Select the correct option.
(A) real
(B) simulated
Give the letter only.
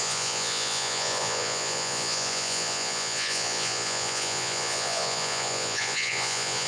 B